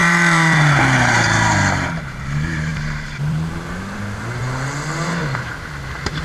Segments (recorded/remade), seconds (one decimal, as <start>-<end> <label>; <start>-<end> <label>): 0.0-4.4 remade; 4.4-6.2 recorded